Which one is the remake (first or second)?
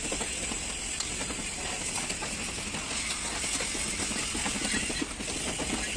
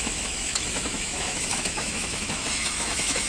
second